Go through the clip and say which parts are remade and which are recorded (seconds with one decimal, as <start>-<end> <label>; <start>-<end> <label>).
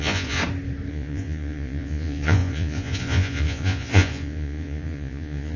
0.0-0.4 remade; 0.4-0.9 recorded; 0.9-5.6 remade